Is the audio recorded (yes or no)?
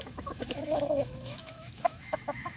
no